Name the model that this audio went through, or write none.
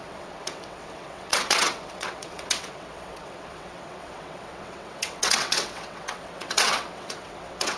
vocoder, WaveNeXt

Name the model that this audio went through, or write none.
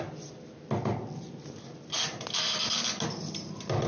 none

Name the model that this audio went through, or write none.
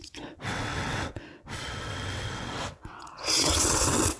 vocoder, WaveNeXt